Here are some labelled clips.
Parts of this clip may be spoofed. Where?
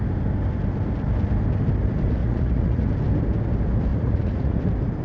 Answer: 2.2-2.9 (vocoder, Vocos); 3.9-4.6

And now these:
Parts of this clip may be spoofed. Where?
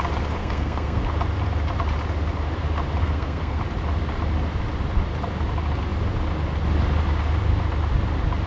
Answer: 0.4-1.0 (codec, SNAC); 3.0-3.6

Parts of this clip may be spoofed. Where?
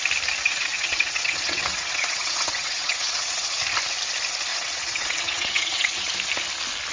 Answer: 0.4-3.6 (vocoder, WaveNeXt); 4.5-6.1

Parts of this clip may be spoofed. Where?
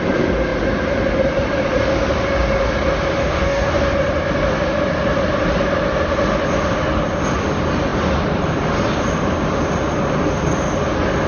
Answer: 3.2-3.7 (codec, DAC)